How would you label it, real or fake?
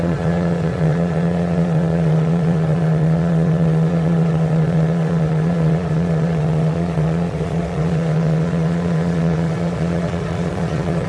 fake